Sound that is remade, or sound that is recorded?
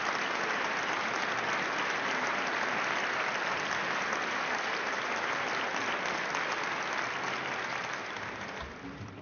recorded